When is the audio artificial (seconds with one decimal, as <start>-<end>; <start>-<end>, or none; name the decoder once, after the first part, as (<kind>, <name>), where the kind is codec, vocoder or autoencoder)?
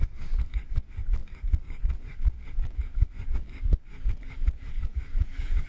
0.0-5.7 (codec, DAC)